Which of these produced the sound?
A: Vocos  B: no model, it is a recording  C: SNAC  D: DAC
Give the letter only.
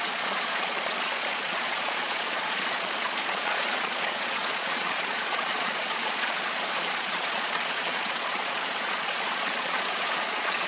A